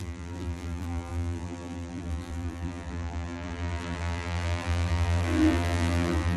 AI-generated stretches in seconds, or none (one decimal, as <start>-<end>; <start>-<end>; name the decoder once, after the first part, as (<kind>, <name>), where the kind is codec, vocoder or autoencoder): 0.0-6.4 (vocoder, BigVGAN v2)